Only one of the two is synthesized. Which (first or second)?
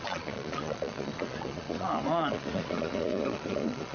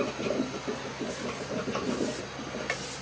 first